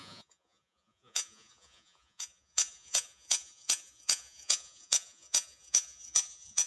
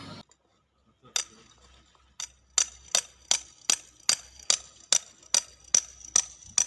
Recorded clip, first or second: second